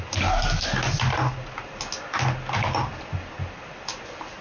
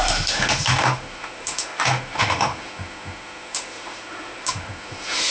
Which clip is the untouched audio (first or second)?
first